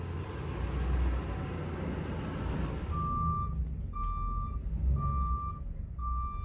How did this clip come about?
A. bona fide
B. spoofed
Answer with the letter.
A